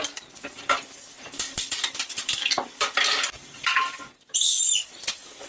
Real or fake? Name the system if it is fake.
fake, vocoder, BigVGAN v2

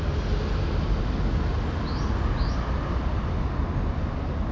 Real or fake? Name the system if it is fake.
real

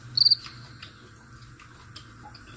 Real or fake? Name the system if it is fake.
real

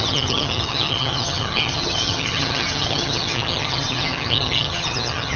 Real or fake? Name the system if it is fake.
fake, vocoder, HiFi-GAN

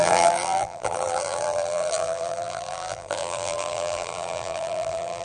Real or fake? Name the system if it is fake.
fake, vocoder, BigVGAN v2